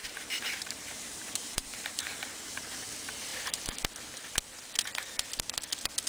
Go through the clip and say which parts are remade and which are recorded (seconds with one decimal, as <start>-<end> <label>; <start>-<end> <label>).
0.0-2.7 remade; 2.7-6.1 recorded